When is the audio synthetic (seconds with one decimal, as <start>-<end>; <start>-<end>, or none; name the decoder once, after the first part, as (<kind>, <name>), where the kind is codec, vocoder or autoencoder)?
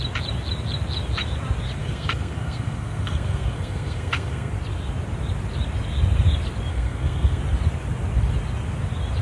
1.8-4.5 (codec, SNAC); 6.7-7.4